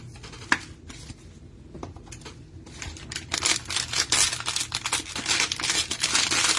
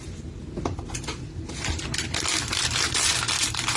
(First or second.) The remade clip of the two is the second